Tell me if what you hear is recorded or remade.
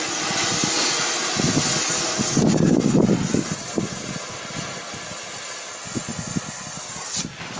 recorded